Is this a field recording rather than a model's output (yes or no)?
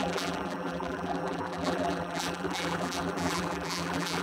no